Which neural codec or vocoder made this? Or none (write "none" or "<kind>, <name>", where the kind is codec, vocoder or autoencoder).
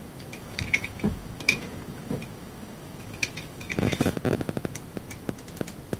autoencoder, DAC-VAE